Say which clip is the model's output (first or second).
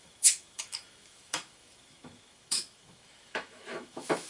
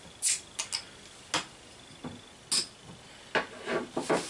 first